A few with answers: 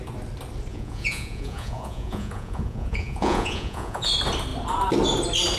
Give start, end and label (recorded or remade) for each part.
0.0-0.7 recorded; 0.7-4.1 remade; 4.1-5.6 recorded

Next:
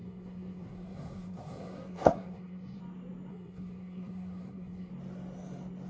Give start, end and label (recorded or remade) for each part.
0.0-2.8 remade; 2.8-3.3 recorded; 3.3-4.9 remade; 4.9-5.9 recorded

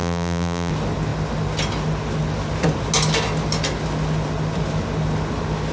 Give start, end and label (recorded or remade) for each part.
0.0-0.7 remade; 0.7-5.7 recorded

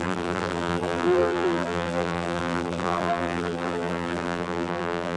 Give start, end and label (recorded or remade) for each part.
0.0-5.2 remade

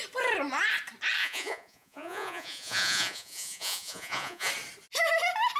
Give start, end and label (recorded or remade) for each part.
0.0-1.2 recorded; 1.2-4.5 remade; 4.5-5.6 recorded

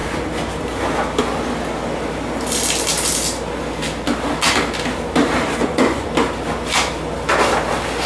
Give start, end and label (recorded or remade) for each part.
0.0-5.6 recorded; 5.6-6.1 remade; 6.1-8.1 recorded